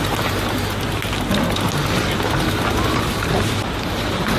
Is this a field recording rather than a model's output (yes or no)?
yes